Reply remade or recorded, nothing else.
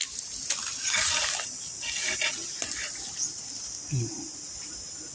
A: recorded